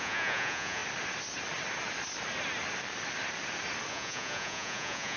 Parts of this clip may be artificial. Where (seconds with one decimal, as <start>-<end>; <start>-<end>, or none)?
0.0-0.8; 3.9-5.2